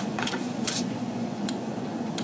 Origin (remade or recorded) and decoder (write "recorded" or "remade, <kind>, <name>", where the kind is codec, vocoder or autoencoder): remade, vocoder, Vocos